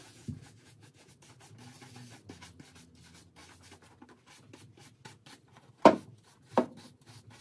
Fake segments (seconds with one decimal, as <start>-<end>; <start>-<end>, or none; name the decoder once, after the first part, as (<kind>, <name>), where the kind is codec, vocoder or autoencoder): 0.0-1.1 (vocoder, Vocos)